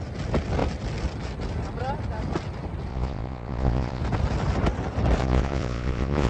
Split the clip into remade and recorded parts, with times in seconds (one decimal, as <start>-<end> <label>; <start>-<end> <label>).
0.0-2.9 recorded; 2.9-4.0 remade; 4.0-5.2 recorded; 5.2-6.3 remade